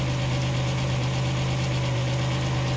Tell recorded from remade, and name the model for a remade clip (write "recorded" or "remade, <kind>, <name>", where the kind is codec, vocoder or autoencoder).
recorded